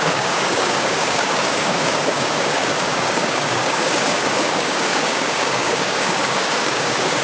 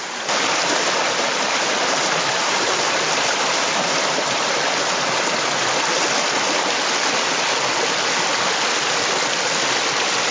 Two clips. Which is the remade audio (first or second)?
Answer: first